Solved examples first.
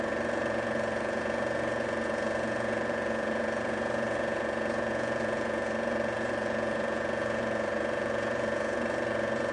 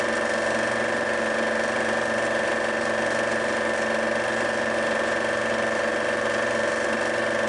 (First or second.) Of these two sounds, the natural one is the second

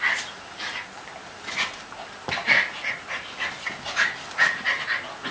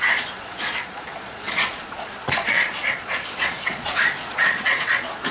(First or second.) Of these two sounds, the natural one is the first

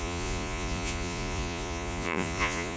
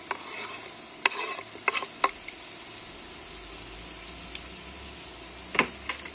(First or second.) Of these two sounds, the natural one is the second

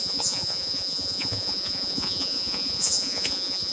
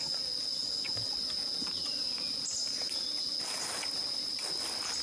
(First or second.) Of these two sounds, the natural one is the second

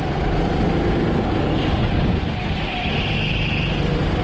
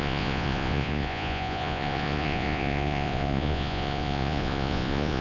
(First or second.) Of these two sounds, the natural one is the first